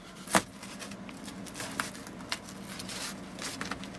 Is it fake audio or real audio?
real